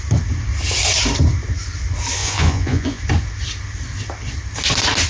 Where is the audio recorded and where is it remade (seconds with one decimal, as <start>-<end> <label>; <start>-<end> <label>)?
0.0-2.2 recorded; 2.2-3.0 remade; 3.0-5.1 recorded